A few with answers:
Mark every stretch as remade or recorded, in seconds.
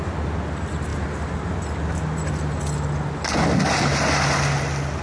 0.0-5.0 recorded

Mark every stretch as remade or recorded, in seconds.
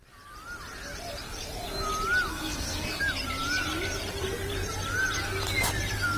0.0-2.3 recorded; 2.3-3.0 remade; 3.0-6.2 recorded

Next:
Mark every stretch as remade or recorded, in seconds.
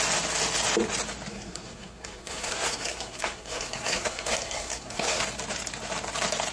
0.0-1.3 recorded; 1.3-5.2 remade; 5.2-6.5 recorded